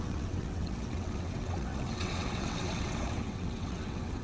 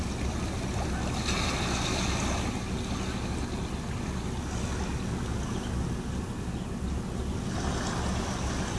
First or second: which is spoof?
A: first